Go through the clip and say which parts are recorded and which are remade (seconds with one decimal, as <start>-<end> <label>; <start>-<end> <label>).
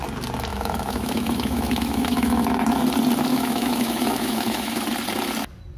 0.0-0.5 recorded; 0.5-2.8 remade; 2.8-3.3 recorded; 3.3-4.8 remade; 4.8-5.8 recorded